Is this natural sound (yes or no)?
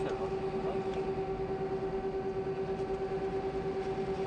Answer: yes